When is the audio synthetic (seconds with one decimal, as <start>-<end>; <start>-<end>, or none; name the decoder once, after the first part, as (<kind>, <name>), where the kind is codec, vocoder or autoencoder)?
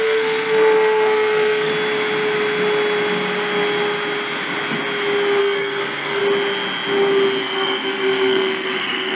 0.0-1.7 (codec, SNAC); 5.4-6.2; 7.4-9.1